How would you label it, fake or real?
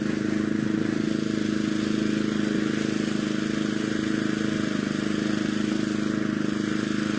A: real